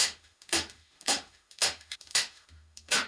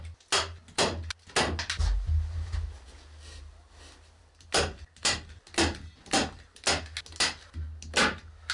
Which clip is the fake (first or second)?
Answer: first